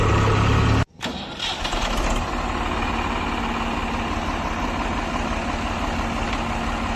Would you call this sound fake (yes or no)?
no